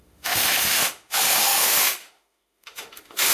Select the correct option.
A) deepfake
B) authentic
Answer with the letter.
A